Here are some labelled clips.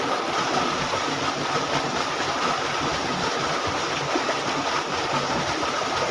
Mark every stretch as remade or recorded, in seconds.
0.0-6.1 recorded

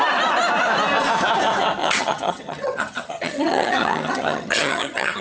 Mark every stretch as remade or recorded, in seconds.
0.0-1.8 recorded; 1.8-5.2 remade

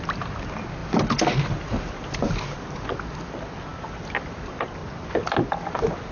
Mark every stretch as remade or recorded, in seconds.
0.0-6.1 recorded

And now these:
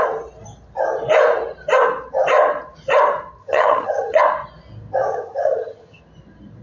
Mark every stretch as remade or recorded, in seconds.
0.0-3.4 recorded; 3.4-4.2 remade; 4.2-5.1 recorded; 5.1-6.0 remade; 6.0-6.6 recorded

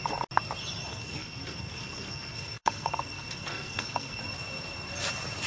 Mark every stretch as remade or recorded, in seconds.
0.0-0.9 recorded; 0.9-4.2 remade; 4.2-5.5 recorded